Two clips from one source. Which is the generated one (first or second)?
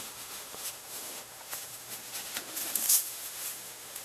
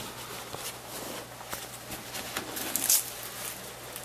first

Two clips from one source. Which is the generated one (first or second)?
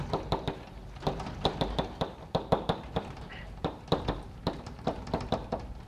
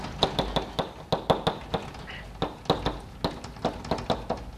first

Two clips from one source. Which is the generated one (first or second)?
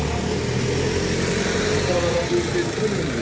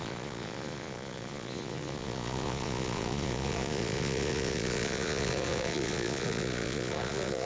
second